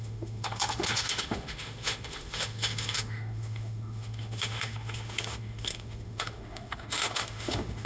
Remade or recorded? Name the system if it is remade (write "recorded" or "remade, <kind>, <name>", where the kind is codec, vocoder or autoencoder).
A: remade, autoencoder, DAC-VAE